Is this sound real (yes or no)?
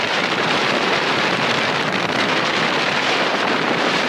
no